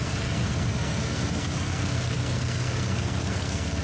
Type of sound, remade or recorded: remade